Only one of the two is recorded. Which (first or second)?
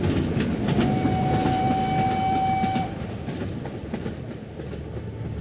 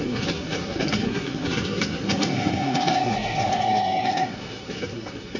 first